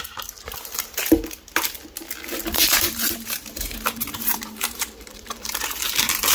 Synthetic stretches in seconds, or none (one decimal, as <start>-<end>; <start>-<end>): 2.6-6.3